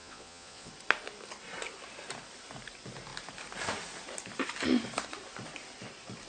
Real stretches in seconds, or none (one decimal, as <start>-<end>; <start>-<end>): 0.7-6.3